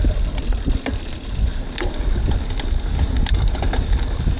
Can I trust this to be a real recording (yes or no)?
yes